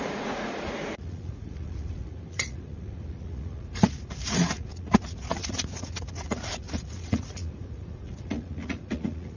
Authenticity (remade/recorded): remade